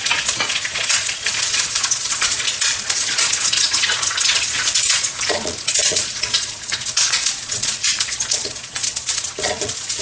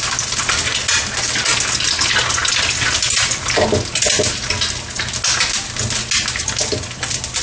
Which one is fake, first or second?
first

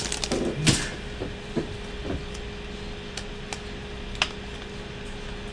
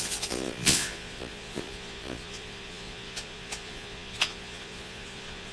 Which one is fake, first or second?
second